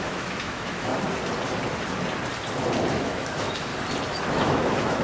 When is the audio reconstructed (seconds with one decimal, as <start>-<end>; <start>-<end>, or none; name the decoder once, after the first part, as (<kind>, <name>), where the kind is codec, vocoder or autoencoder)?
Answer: 0.0-0.9 (autoencoder, DAC-VAE); 2.9-3.7; 4.2-5.0

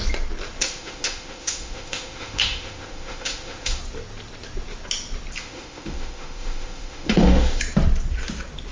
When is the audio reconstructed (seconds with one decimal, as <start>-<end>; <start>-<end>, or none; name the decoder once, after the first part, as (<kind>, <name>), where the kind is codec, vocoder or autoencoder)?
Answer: 0.6-3.8 (autoencoder, DAC-VAE); 5.4-7.6

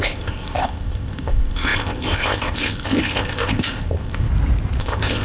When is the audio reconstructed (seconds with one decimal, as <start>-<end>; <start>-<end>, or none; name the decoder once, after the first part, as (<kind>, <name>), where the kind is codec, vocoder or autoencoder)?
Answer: 0.0-4.3 (codec, ZipCodec); 4.8-5.2

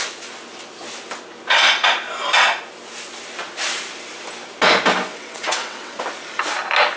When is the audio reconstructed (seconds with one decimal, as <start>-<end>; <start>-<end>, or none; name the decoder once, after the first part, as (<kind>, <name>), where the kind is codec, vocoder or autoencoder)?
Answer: 5.1-6.0 (vocoder, WaveNeXt)